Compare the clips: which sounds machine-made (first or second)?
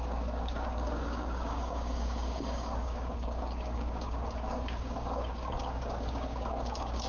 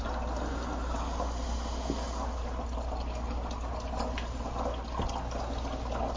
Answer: first